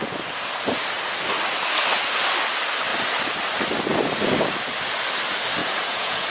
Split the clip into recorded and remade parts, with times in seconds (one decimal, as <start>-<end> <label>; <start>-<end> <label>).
0.0-5.6 recorded; 5.6-6.3 remade